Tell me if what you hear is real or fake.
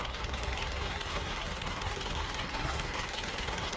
fake